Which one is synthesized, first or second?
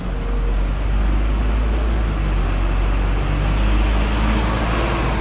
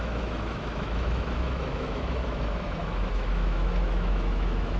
second